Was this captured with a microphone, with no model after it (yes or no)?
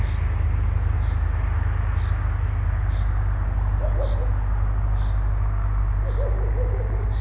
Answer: yes